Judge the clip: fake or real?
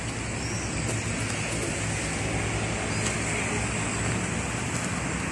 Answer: real